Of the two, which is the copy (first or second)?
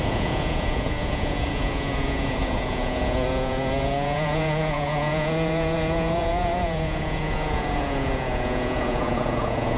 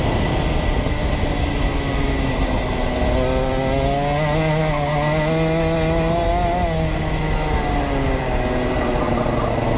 first